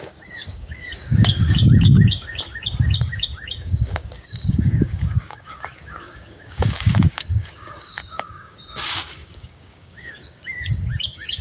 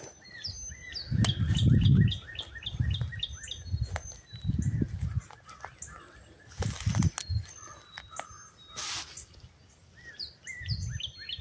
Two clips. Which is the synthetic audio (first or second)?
first